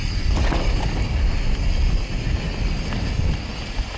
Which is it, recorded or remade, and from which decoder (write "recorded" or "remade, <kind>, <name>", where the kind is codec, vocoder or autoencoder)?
recorded